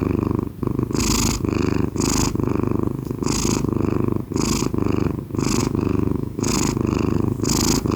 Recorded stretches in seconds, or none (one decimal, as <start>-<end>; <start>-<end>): 0.0-5.6; 6.5-8.0